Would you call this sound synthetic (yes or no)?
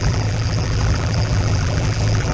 yes